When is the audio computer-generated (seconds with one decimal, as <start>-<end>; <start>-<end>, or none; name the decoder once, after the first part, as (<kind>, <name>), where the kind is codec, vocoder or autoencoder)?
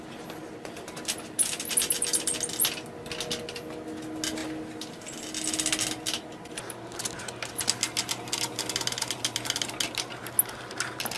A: none